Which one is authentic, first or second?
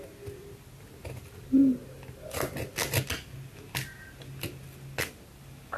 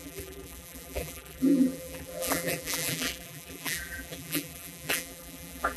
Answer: first